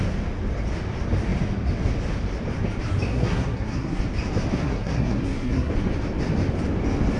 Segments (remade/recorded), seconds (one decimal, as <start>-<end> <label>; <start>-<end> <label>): 0.0-3.1 recorded; 3.1-4.0 remade; 4.0-4.6 recorded; 4.6-5.7 remade; 5.7-7.2 recorded